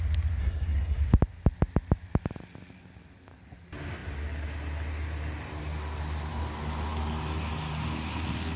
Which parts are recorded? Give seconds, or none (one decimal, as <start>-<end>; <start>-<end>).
0.0-0.4; 1.0-8.6